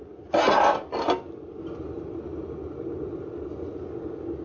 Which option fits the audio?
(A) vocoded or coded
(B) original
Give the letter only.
B